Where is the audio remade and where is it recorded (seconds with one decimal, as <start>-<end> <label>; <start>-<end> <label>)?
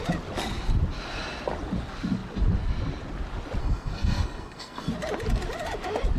0.0-3.6 recorded; 3.6-4.9 remade; 4.9-6.2 recorded